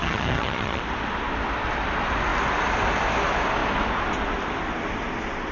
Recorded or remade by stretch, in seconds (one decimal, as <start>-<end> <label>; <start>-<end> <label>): 0.0-0.8 remade; 0.8-5.5 recorded